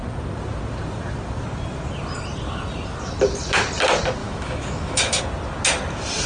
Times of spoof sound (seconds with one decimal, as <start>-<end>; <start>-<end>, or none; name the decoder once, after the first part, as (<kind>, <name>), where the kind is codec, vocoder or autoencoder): 4.2-5.2 (autoencoder, DAC-VAE)